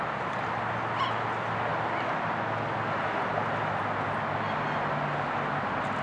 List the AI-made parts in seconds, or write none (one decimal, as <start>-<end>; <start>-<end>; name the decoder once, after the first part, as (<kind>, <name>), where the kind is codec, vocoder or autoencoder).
none